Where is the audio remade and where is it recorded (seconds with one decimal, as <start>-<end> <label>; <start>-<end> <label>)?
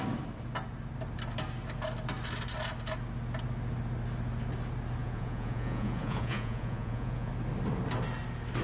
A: 0.0-5.0 recorded; 5.0-7.3 remade; 7.3-8.6 recorded